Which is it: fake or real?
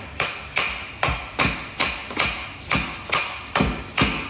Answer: real